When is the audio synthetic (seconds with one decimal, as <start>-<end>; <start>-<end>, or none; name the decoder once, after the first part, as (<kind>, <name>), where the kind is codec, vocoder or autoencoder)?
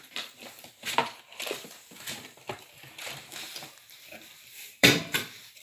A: 0.0-1.0 (vocoder, BigVGAN v2); 3.4-5.6